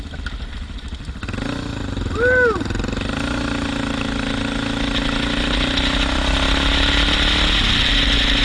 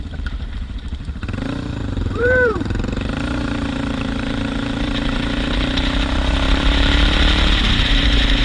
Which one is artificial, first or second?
second